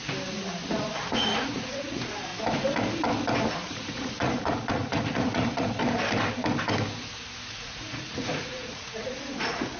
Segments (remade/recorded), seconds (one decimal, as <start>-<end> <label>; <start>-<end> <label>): 0.0-1.1 recorded; 1.1-2.3 remade; 2.3-3.5 recorded; 3.5-5.8 remade; 5.8-7.5 recorded; 7.5-9.8 remade